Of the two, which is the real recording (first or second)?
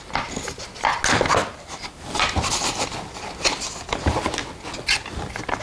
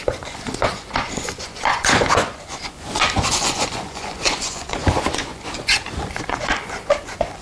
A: first